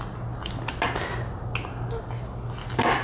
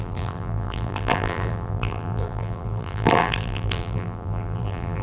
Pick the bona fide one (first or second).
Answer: first